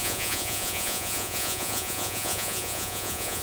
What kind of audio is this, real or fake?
fake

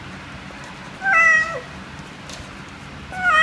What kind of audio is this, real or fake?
real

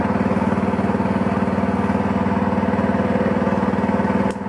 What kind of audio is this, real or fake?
real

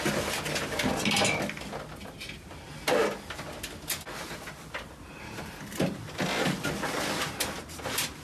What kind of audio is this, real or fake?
real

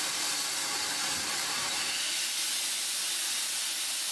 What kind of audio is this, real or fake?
real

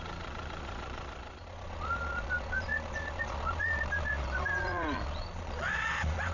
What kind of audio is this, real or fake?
fake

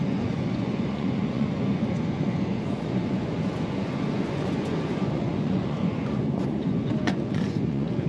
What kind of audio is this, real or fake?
fake